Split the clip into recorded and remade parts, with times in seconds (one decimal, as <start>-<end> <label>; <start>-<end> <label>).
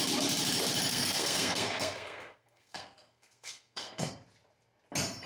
0.0-0.9 recorded; 0.9-4.1 remade; 4.1-5.3 recorded